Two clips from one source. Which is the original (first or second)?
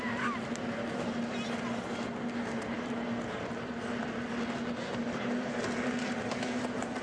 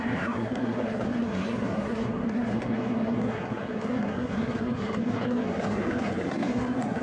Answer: first